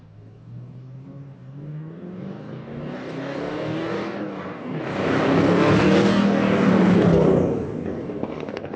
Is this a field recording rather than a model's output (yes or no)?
no